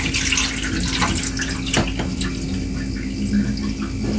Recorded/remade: recorded